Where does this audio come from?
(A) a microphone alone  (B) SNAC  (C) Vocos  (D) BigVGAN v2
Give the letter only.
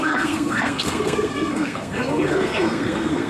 B